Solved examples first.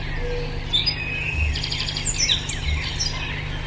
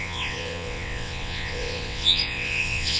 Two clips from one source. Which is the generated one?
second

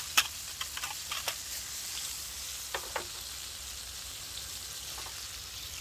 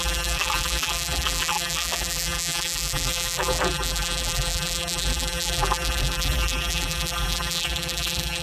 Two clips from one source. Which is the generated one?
second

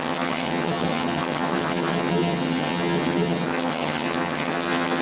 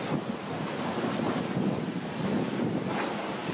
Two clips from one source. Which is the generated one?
first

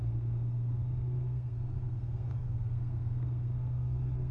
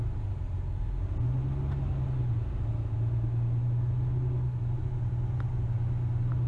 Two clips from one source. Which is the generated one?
first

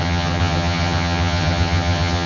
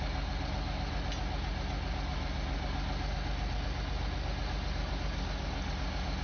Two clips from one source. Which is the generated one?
first